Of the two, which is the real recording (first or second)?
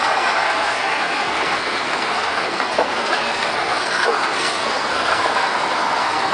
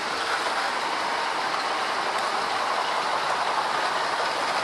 second